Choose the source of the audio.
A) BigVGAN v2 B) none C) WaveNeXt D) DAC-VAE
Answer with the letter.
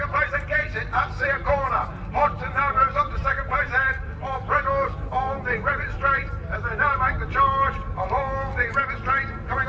B